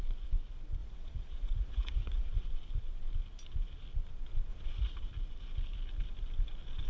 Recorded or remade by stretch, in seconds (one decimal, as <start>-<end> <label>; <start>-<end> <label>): 0.0-0.8 recorded; 0.8-2.3 remade; 2.3-4.5 recorded; 4.5-5.1 remade; 5.1-6.9 recorded

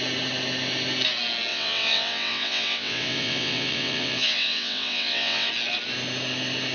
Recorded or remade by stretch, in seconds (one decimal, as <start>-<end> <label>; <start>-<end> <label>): 0.0-1.5 recorded; 1.5-5.5 remade; 5.5-6.7 recorded

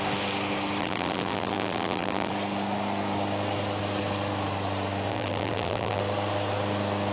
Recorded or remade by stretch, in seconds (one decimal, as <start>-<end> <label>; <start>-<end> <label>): 0.0-0.8 recorded; 0.8-2.3 remade; 2.3-5.1 recorded; 5.1-6.0 remade; 6.0-7.1 recorded

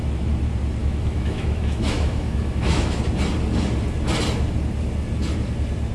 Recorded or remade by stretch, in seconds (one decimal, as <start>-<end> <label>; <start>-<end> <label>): 0.0-0.8 recorded; 0.8-3.0 remade; 3.0-5.9 recorded